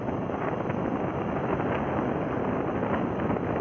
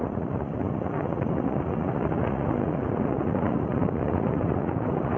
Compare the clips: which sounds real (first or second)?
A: first